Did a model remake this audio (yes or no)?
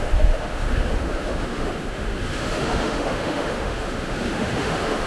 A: yes